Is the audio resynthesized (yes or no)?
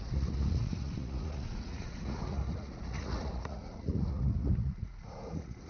yes